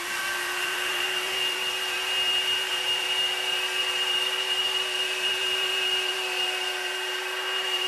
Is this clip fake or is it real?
fake